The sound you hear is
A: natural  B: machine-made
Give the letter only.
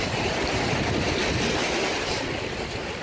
A